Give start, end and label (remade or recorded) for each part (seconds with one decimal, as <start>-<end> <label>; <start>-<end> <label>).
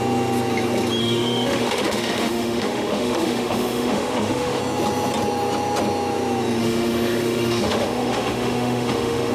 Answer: 0.0-1.0 recorded; 1.0-4.6 remade; 4.6-6.6 recorded; 6.6-9.3 remade